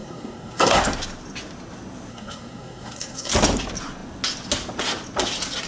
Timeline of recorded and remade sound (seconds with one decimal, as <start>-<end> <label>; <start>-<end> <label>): 0.0-0.8 remade; 0.8-2.1 recorded; 2.1-3.3 remade; 3.3-5.7 recorded